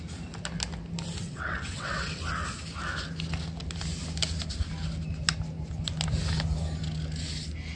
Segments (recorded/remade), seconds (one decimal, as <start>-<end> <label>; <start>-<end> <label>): 0.0-1.2 recorded; 1.2-2.2 remade; 2.2-7.8 recorded